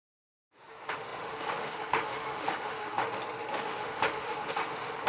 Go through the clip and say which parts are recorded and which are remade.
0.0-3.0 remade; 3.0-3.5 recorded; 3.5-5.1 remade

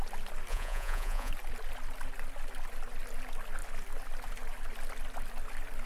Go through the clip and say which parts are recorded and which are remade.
0.0-0.5 recorded; 0.5-1.3 remade; 1.3-5.9 recorded

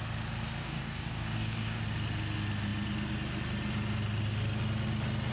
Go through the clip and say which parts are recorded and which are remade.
0.0-0.6 recorded; 0.6-1.8 remade; 1.8-5.3 recorded

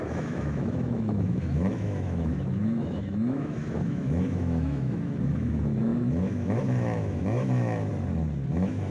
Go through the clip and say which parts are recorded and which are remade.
0.0-7.9 remade; 7.9-8.5 recorded; 8.5-8.9 remade

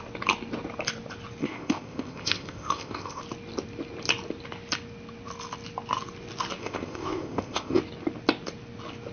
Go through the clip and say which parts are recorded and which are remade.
0.0-1.4 recorded; 1.4-3.2 remade; 3.2-6.6 recorded; 6.6-7.8 remade; 7.8-9.1 recorded

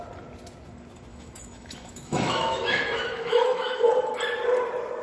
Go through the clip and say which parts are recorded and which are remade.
0.0-1.1 recorded; 1.1-4.1 remade; 4.1-5.0 recorded

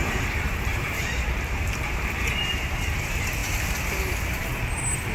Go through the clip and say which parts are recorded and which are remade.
0.0-3.4 remade; 3.4-4.2 recorded; 4.2-5.1 remade

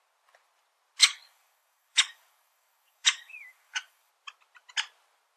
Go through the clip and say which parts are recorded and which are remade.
0.0-1.0 recorded; 1.0-4.1 remade; 4.1-5.4 recorded